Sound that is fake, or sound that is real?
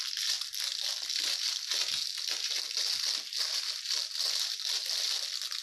real